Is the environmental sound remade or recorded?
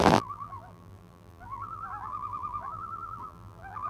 remade